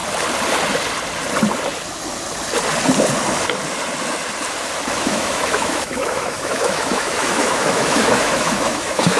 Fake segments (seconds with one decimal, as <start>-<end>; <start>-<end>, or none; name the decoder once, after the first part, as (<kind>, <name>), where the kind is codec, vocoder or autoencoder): 5.0-9.2 (autoencoder, DAC-VAE)